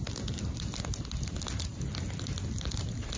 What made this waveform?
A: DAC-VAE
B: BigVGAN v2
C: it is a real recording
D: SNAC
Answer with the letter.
C